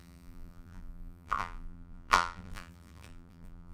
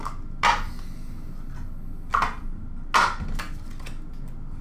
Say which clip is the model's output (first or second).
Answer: first